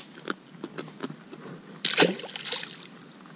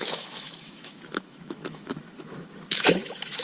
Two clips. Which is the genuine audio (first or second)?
first